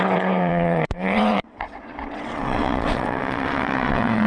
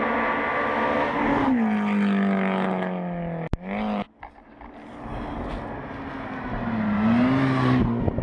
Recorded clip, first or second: second